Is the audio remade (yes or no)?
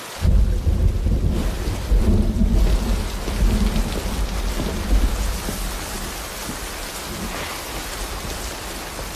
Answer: no